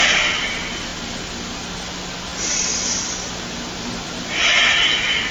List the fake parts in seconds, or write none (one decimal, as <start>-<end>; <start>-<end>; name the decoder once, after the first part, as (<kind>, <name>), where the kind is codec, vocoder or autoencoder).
none